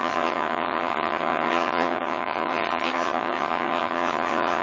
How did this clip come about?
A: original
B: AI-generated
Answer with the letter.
B